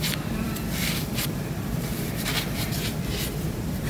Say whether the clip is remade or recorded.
remade